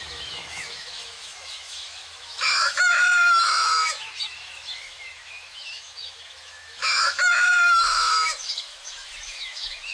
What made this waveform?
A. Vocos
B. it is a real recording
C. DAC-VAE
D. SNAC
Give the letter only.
C